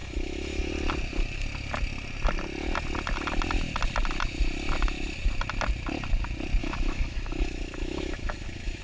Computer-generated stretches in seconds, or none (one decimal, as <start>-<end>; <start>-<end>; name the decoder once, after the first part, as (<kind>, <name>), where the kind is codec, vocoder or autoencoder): 0.0-0.7 (autoencoder, DAC-VAE); 6.6-8.8